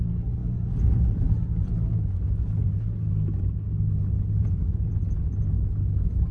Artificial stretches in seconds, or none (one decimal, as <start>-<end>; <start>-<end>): 0.4-1.7; 2.6-3.3; 4.4-5.0